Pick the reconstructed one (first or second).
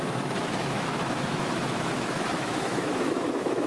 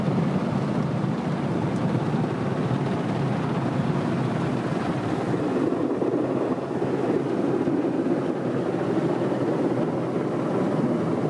first